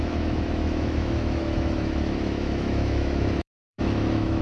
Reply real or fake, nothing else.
fake